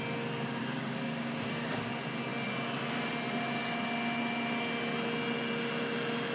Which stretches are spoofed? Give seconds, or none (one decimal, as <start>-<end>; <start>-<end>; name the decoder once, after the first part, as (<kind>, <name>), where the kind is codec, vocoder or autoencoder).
0.6-1.9 (codec, DAC)